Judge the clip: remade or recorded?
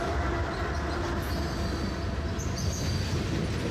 recorded